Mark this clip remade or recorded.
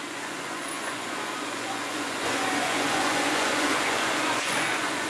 remade